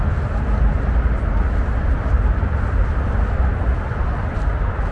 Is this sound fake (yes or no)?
no